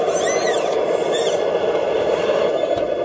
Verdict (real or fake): real